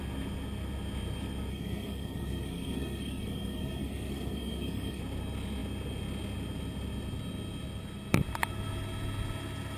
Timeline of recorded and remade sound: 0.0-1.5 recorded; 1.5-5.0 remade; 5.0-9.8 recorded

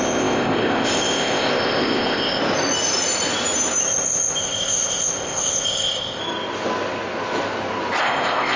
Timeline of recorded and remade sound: 0.0-2.4 remade; 2.4-3.8 recorded; 3.8-6.2 remade; 6.2-8.0 recorded; 8.0-8.6 remade

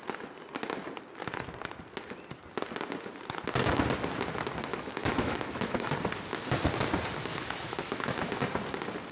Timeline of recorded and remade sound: 0.0-4.7 recorded; 4.7-5.9 remade; 5.9-7.3 recorded; 7.3-8.4 remade; 8.4-9.1 recorded

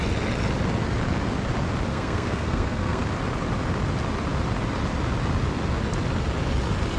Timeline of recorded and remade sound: 0.0-1.9 recorded; 1.9-3.0 remade; 3.0-7.0 recorded

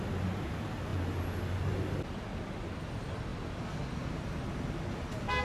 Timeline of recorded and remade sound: 0.0-5.4 recorded

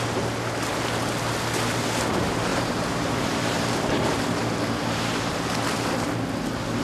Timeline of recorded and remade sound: 0.0-2.5 recorded; 2.5-4.2 remade; 4.2-6.8 recorded